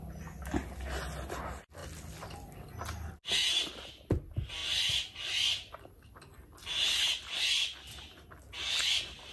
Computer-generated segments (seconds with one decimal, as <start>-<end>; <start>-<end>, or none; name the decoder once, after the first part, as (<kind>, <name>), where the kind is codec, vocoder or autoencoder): none

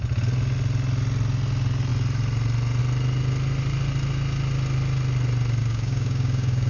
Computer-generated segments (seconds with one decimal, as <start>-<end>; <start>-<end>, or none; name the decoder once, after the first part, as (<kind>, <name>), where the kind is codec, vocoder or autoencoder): 5.6-6.7 (codec, DAC)

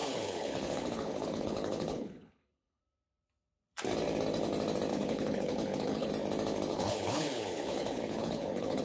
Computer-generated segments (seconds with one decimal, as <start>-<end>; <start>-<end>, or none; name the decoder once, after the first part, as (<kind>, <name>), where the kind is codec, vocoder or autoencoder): 0.0-2.8 (codec, HILCodec); 4.9-6.1; 6.7-8.8

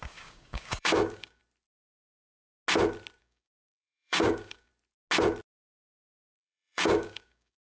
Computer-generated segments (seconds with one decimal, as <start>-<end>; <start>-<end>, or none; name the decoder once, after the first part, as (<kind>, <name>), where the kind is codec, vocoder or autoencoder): 0.0-1.4 (codec, DAC); 3.2-4.7; 6.1-7.8

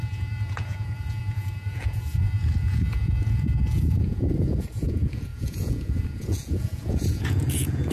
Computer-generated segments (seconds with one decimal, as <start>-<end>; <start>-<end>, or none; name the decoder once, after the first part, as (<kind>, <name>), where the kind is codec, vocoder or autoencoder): 0.0-7.9 (vocoder, Vocos)

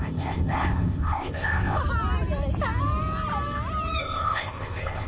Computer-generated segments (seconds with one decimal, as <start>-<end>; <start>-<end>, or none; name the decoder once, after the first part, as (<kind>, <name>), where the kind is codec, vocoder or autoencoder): 0.0-1.8 (codec, ZipCodec); 4.0-5.1

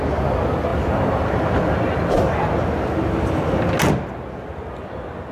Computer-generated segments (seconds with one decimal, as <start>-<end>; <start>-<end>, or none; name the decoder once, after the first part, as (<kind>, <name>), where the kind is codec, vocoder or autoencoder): none

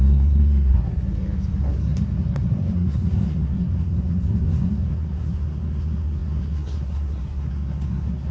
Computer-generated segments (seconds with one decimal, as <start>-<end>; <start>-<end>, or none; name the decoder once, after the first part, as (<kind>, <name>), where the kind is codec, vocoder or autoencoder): 0.0-1.0 (codec, SNAC); 1.6-8.3